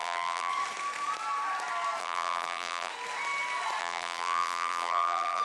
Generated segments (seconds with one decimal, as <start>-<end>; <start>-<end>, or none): 0.0-0.5; 2.0-2.9; 3.8-5.4